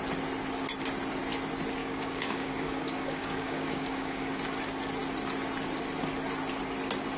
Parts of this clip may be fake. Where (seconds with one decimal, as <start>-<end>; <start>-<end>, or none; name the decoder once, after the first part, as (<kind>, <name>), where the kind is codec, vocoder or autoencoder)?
1.8-4.4 (codec, DAC)